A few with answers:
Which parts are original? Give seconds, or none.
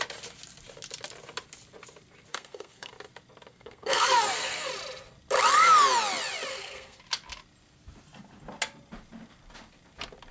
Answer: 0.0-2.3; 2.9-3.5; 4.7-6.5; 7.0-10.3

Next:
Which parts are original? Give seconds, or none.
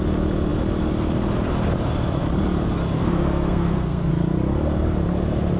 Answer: 0.0-3.0; 4.1-5.6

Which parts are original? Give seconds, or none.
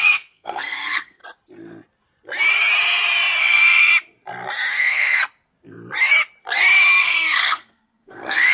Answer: 1.2-3.4; 3.9-4.7; 5.2-7.0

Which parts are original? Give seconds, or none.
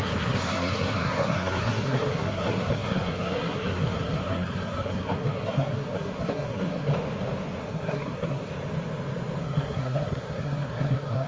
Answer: 6.9-7.6; 8.5-9.4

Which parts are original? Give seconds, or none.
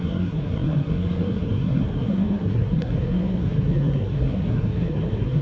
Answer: none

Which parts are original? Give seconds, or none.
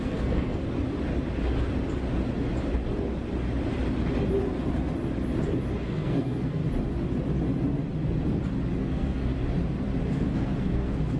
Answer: 0.6-5.8; 6.6-8.8; 9.3-10.1